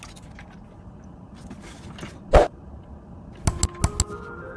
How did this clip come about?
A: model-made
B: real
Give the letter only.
B